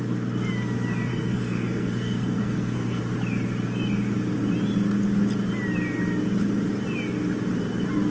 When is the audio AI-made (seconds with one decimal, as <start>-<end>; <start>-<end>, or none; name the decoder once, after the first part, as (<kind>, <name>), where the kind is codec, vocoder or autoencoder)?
1.1-3.0 (codec, SNAC)